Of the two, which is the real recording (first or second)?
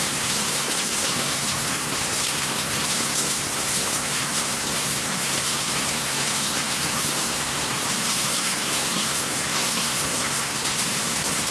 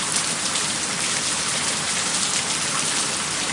second